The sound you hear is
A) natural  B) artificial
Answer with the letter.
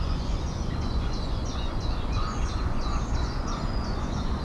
B